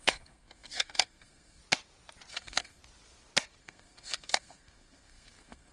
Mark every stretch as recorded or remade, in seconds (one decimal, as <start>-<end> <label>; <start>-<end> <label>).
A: 0.0-1.6 remade; 1.6-2.3 recorded; 2.3-2.8 remade; 2.8-3.6 recorded; 3.6-5.7 remade

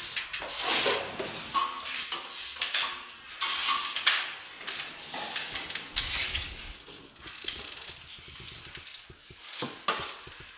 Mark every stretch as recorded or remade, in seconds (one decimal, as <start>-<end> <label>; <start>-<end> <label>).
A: 0.0-6.2 recorded; 6.2-7.0 remade; 7.0-8.9 recorded; 8.9-9.7 remade; 9.7-10.6 recorded

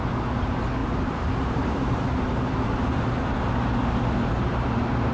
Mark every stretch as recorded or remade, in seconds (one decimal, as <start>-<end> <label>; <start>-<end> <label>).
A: 0.0-0.8 recorded; 0.8-2.9 remade; 2.9-5.1 recorded

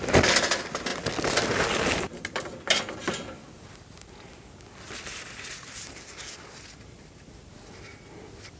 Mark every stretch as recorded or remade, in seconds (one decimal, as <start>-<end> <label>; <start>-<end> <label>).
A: 0.0-8.6 recorded